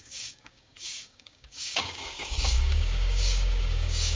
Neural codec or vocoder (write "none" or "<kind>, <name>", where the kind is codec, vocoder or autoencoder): codec, DAC